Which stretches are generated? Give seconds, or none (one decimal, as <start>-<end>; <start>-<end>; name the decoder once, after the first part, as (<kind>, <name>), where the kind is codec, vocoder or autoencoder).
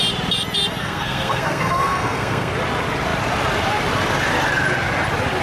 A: 0.8-2.5 (codec, SNAC)